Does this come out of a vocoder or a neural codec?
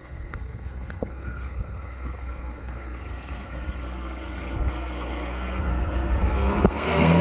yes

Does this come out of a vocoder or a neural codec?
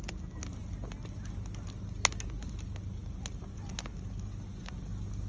no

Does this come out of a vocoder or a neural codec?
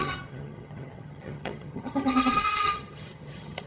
yes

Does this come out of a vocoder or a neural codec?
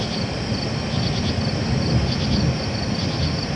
no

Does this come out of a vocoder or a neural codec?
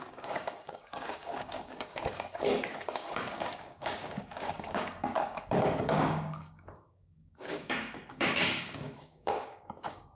yes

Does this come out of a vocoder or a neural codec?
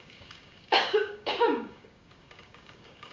yes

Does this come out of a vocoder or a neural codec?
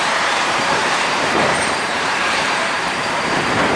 yes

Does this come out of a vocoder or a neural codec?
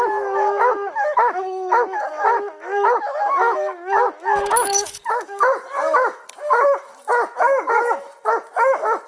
yes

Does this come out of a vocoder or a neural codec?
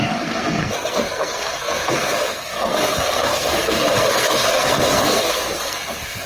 yes